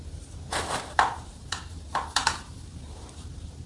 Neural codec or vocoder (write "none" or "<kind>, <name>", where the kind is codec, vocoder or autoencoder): vocoder, BigVGAN v2